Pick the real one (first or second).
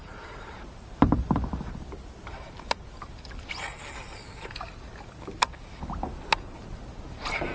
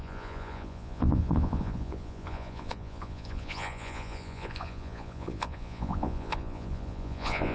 first